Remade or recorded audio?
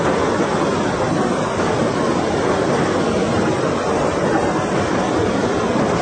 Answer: recorded